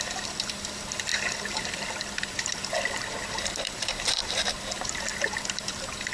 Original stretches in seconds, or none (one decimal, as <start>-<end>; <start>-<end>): 2.6-3.5